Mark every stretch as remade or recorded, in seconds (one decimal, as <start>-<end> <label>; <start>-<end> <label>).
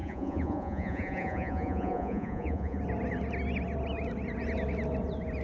0.0-2.8 remade; 2.8-5.4 recorded